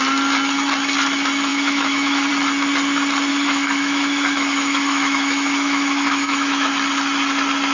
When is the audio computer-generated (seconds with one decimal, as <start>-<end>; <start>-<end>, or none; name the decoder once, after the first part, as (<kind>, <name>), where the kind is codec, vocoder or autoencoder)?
1.5-2.3 (autoencoder, DAC-VAE); 3.3-6.7